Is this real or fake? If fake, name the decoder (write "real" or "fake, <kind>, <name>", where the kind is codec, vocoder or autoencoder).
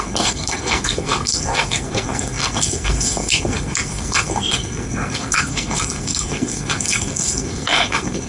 fake, codec, SNAC